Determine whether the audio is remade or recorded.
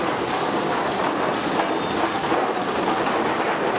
recorded